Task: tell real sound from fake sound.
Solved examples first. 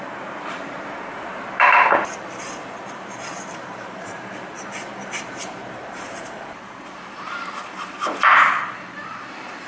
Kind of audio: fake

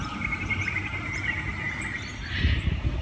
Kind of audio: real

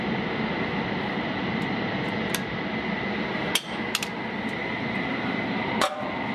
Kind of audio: real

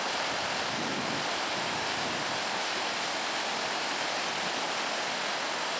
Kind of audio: real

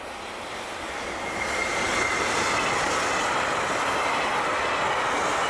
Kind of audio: real